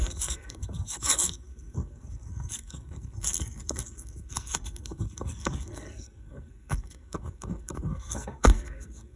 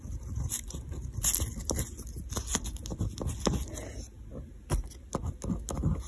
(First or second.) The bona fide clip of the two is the second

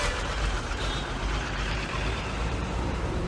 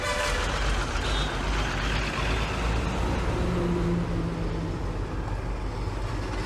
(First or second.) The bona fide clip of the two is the second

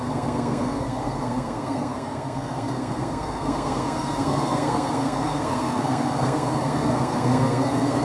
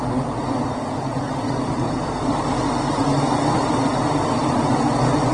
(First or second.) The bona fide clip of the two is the second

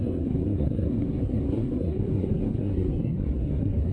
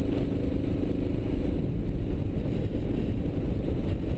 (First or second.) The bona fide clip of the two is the second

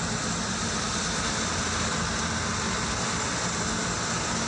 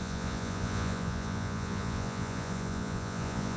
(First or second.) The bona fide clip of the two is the first